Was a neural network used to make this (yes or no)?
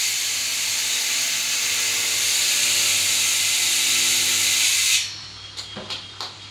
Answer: no